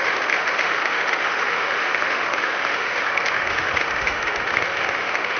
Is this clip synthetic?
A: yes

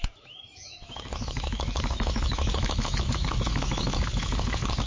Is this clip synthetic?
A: yes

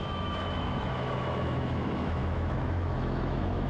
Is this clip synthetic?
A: yes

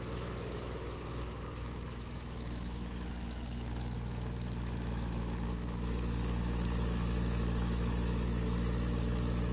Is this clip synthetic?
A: yes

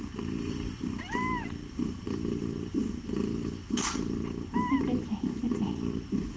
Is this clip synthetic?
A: no